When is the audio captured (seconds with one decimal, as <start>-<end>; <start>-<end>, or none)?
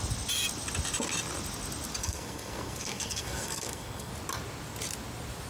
0.0-2.0; 4.1-5.5